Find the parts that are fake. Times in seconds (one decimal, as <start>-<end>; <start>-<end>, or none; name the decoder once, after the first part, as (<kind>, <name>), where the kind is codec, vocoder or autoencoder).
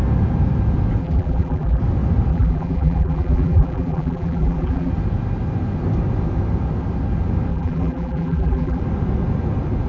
1.0-1.8 (vocoder, BigVGAN v2); 2.3-4.9; 7.5-8.8